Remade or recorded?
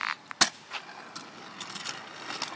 recorded